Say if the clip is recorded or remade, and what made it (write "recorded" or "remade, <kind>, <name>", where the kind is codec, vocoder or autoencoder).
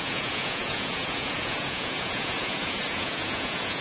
remade, vocoder, Vocos